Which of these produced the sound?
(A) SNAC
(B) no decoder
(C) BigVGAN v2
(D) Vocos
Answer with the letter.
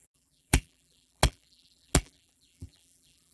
C